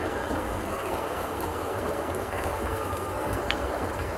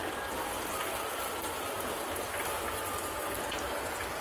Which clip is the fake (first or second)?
first